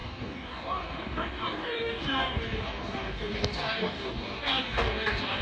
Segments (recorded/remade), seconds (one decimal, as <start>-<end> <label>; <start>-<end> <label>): 0.0-5.4 remade

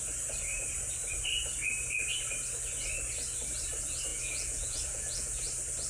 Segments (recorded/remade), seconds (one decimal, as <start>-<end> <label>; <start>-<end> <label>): 0.0-4.1 recorded; 4.1-5.4 remade; 5.4-5.9 recorded

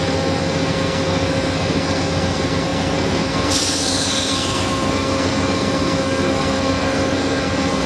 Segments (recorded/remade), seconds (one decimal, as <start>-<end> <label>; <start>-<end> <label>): 0.0-7.9 remade

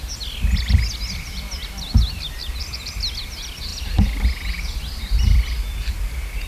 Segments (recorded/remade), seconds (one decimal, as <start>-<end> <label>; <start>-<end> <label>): 0.0-6.5 recorded

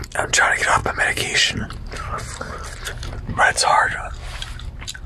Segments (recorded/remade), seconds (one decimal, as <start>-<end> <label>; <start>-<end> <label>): 0.0-5.1 recorded